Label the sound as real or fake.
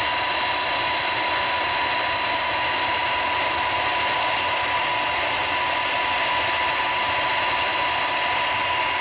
real